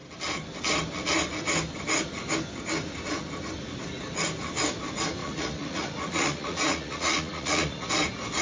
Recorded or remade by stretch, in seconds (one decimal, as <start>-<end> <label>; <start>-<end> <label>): 0.0-5.2 recorded; 5.2-7.9 remade; 7.9-8.4 recorded